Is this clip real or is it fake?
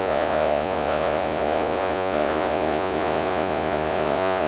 fake